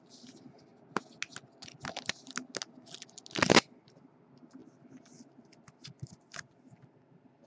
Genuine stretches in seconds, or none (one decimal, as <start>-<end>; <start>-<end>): 0.0-7.5